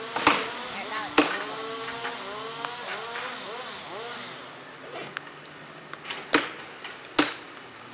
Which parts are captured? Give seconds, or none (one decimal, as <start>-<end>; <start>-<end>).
0.0-7.9